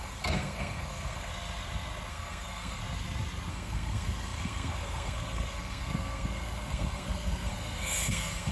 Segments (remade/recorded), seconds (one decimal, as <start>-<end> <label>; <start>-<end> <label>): 0.0-1.3 remade; 1.3-2.1 recorded; 2.1-2.8 remade; 2.8-3.5 recorded; 3.5-8.5 remade